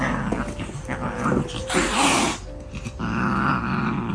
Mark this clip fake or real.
real